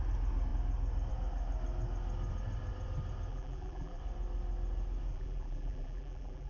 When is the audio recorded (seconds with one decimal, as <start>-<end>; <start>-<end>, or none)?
0.0-3.3; 4.0-5.1